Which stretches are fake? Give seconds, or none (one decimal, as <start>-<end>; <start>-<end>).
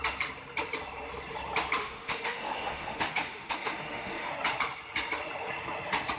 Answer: 1.8-4.3